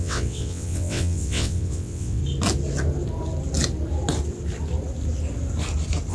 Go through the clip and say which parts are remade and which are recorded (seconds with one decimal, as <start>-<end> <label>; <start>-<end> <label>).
0.0-2.2 remade; 2.2-6.1 recorded

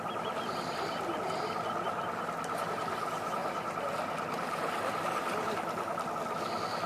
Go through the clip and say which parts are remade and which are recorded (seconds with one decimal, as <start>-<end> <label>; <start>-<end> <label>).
0.0-6.9 recorded

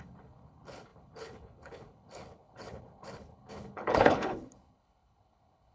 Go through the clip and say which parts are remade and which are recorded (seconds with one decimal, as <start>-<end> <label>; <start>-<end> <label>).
0.0-5.7 remade